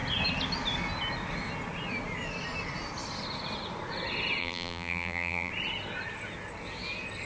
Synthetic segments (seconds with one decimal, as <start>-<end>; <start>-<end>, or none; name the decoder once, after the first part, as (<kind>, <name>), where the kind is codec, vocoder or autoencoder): 4.4-5.5 (vocoder, BigVGAN v2)